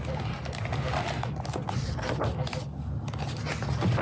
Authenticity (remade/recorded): recorded